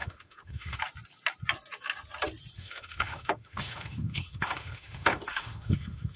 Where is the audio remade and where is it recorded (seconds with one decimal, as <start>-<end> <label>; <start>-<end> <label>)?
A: 0.0-0.8 remade; 0.8-2.6 recorded; 2.6-6.2 remade